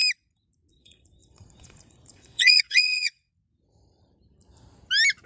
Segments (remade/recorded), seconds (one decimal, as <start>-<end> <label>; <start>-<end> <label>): 0.0-0.7 recorded; 0.7-3.3 remade; 3.3-5.3 recorded